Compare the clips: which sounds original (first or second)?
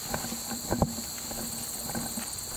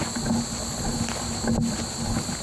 second